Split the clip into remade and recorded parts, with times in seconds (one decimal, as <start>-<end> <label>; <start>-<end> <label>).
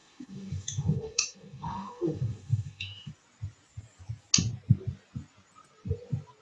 0.0-3.1 remade; 3.1-6.4 recorded